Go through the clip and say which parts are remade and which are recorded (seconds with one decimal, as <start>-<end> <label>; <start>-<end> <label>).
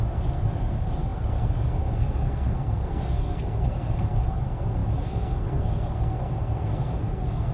0.0-7.5 remade